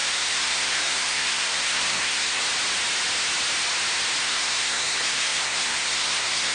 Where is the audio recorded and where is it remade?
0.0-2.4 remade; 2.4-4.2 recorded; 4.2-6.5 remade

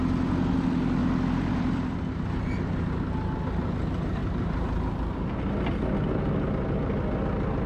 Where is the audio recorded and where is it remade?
0.0-1.0 recorded; 1.0-1.9 remade; 1.9-4.2 recorded; 4.2-5.4 remade; 5.4-7.7 recorded

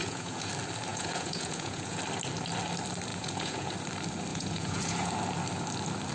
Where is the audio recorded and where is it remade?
0.0-0.5 remade; 0.5-0.9 recorded; 0.9-2.0 remade; 2.0-3.1 recorded; 3.1-3.7 remade; 3.7-4.3 recorded; 4.3-5.1 remade; 5.1-6.1 recorded